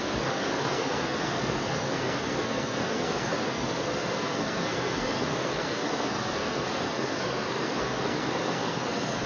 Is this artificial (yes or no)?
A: yes